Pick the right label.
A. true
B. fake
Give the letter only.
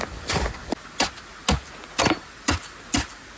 A